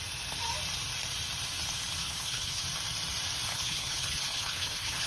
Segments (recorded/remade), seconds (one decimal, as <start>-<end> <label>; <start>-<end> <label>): 0.0-2.0 recorded; 2.0-2.6 remade; 2.6-3.5 recorded; 3.5-5.1 remade